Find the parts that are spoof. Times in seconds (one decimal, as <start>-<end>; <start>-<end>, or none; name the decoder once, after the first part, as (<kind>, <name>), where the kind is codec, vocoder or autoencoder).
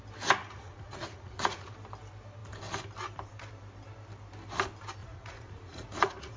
0.4-1.7 (vocoder, Vocos); 5.0-6.4